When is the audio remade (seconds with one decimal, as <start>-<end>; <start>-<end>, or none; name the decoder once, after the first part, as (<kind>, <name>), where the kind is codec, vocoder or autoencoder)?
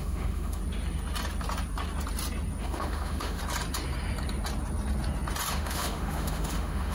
0.0-0.6 (autoencoder, DAC-VAE); 2.6-3.4; 5.5-6.9